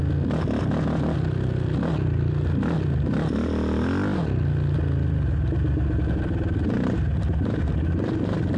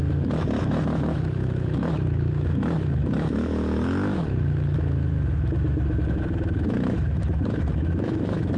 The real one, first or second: first